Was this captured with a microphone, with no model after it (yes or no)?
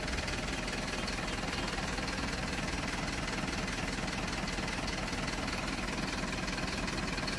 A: yes